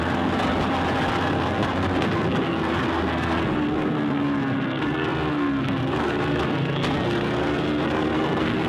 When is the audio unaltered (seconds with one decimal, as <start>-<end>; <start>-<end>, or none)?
0.5-1.1